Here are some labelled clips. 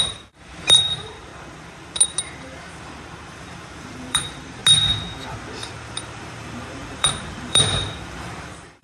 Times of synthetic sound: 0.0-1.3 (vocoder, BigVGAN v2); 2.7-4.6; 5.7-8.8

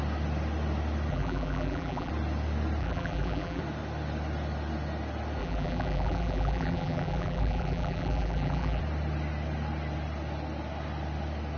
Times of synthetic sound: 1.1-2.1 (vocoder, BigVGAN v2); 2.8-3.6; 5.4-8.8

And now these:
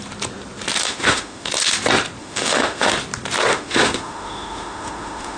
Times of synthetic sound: 0.8-1.5 (autoencoder, DAC-VAE); 2.2-2.9; 3.5-5.4

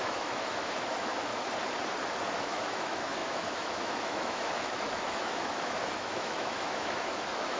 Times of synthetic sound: 0.0-1.3 (autoencoder, DAC-VAE); 2.4-7.6

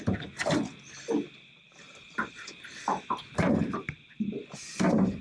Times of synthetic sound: 1.7-4.3 (vocoder, BigVGAN v2)

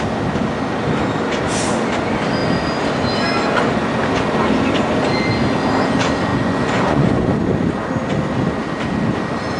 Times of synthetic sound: 6.3-7.4 (vocoder, Vocos)

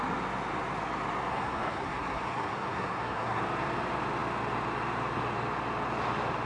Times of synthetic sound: 1.3-3.4 (codec, SNAC)